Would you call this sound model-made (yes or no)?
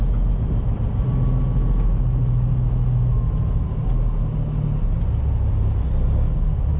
no